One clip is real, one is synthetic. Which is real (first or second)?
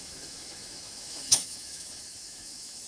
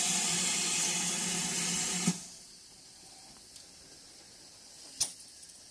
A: second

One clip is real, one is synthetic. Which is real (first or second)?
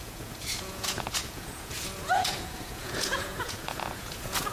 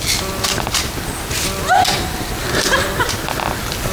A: second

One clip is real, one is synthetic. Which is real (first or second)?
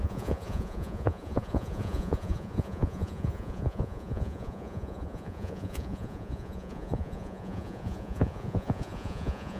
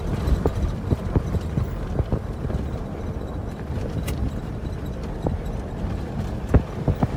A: second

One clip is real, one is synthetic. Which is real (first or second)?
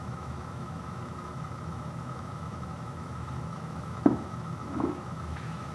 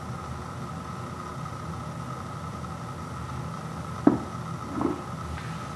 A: second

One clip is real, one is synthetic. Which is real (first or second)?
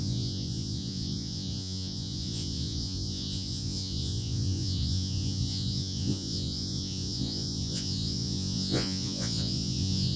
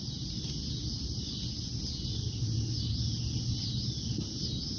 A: second